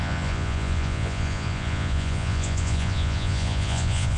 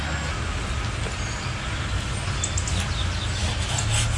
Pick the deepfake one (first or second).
first